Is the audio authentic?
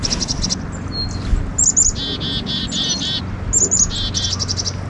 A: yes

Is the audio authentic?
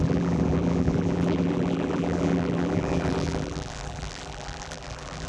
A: no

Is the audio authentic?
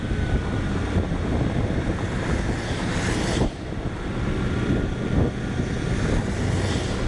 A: yes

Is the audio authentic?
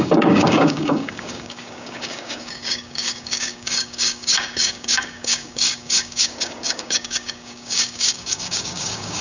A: no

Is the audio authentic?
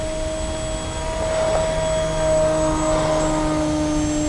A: yes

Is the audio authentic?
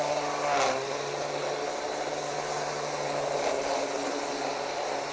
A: no